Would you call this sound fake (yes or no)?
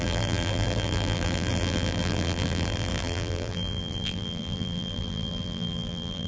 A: yes